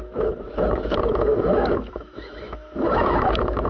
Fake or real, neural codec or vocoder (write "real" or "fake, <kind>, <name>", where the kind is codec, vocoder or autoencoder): fake, autoencoder, DAC-VAE